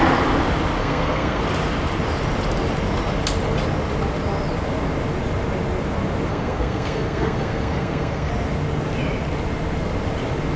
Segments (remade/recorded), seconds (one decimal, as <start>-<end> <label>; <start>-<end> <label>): 0.0-0.8 recorded; 0.8-1.4 remade; 1.4-6.3 recorded; 6.3-8.3 remade; 8.3-10.6 recorded